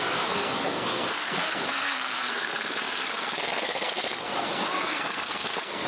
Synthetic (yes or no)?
yes